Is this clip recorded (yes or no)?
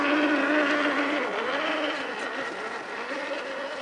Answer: yes